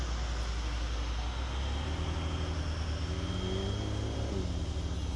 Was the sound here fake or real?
real